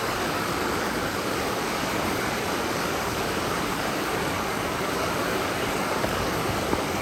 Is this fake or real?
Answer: fake